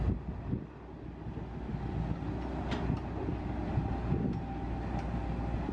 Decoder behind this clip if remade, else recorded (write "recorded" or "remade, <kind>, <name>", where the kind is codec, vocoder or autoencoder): recorded